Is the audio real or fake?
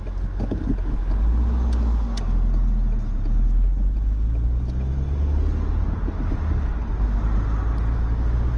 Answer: real